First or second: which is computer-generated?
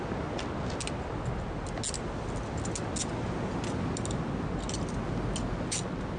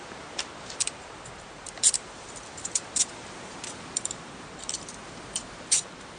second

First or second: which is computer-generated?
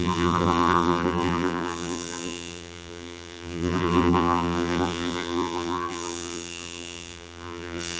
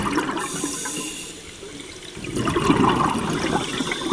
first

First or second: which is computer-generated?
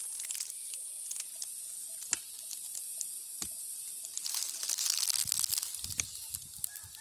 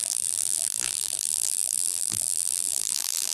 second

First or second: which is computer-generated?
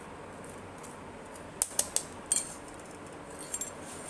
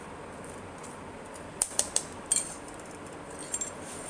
second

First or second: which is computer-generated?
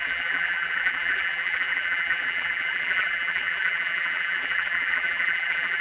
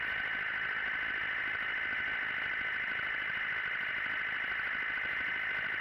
first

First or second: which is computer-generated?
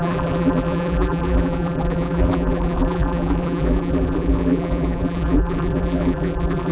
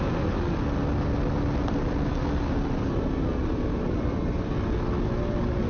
first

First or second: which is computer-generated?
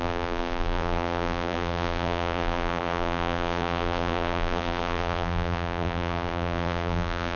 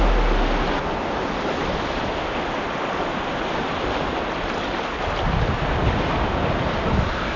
first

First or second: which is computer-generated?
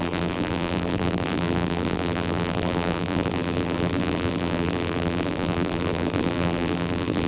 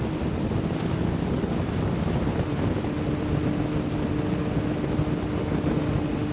first